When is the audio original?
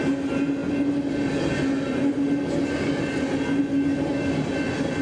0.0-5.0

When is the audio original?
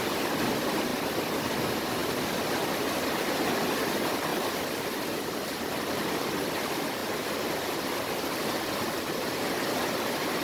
0.9-1.4; 2.0-3.1; 4.3-5.9; 7.0-9.3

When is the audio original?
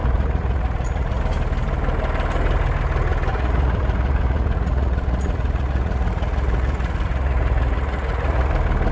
1.2-3.3; 8.5-8.9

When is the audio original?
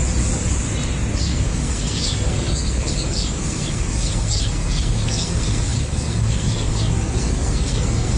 0.0-1.2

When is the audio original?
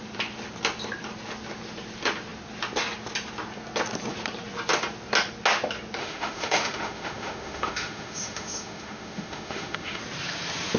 0.0-6.0; 10.0-10.8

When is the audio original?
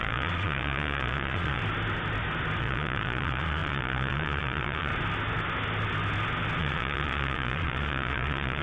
1.6-2.6; 4.9-6.6